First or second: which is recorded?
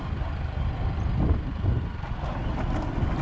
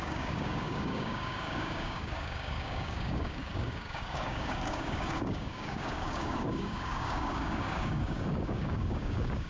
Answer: first